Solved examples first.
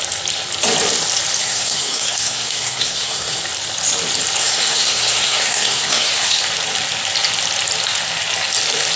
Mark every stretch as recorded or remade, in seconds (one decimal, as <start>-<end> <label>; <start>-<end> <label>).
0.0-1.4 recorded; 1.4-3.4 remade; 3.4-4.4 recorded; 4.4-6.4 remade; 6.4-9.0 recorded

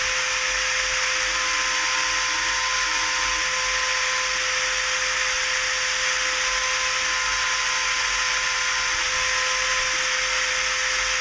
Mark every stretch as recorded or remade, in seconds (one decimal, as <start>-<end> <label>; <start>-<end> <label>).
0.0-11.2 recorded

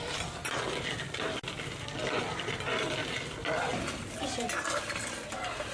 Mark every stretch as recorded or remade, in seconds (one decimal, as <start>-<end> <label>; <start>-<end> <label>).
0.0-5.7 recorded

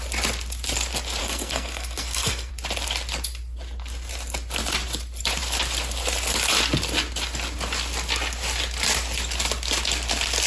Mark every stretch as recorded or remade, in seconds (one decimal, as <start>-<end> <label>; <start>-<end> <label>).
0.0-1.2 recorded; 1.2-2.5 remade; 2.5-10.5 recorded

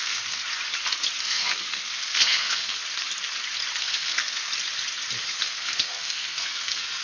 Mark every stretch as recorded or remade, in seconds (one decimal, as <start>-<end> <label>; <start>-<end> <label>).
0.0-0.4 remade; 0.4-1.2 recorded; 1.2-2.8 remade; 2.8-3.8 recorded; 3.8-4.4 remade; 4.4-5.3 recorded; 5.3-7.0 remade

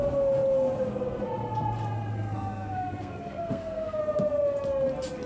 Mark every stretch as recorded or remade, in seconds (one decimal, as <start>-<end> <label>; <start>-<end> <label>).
0.0-2.1 recorded; 2.1-4.0 remade; 4.0-5.3 recorded

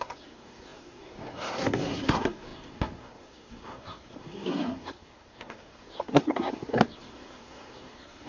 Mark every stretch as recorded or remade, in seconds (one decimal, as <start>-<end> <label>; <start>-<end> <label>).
0.0-8.3 remade